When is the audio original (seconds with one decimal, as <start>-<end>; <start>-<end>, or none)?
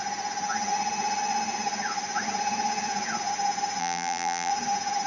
0.0-3.8; 4.5-5.1